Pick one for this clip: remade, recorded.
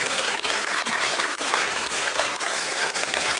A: remade